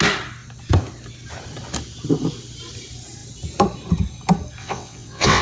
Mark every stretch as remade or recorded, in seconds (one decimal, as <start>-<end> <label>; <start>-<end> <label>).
0.0-4.6 recorded; 4.6-5.4 remade